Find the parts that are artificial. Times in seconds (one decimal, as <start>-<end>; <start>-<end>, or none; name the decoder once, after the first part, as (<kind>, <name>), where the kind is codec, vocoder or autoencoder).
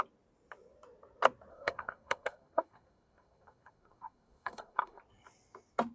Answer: 1.5-5.0 (codec, SNAC)